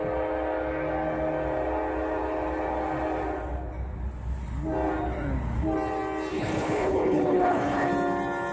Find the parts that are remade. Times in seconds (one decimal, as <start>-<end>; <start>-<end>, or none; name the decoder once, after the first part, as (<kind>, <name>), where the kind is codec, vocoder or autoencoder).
6.3-7.9 (codec, HILCodec)